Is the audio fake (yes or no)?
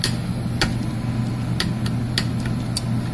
no